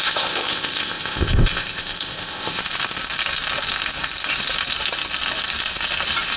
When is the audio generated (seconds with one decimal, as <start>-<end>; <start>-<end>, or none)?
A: 0.0-2.6